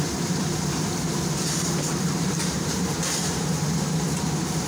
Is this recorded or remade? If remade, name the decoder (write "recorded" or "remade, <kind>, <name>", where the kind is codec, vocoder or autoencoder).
remade, vocoder, BigVGAN v2